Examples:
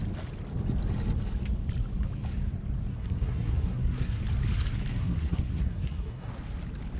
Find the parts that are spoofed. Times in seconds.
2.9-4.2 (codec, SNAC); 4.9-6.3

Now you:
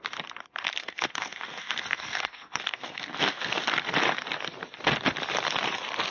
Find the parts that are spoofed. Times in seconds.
0.8-3.6 (codec, SNAC)

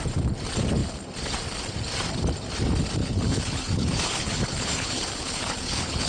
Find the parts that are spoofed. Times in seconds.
3.0-6.1 (codec, HILCodec)

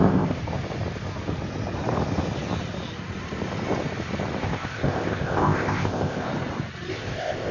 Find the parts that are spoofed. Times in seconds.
0.0-0.4 (codec, ZipCodec); 4.4-6.3; 6.9-7.5